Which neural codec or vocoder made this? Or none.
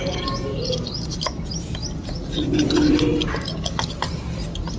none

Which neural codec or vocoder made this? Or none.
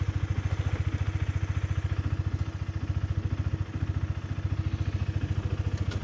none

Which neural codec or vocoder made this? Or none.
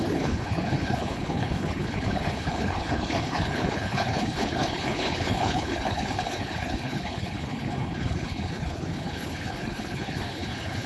codec, HILCodec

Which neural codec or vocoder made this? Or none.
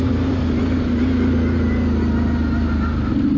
none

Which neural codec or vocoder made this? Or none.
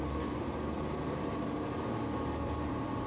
none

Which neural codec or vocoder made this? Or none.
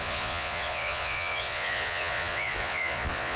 vocoder, Vocos